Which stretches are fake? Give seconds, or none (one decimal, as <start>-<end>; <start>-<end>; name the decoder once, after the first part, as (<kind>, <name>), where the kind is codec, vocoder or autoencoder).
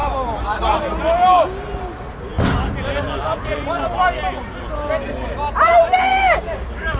6.1-7.0 (codec, DAC)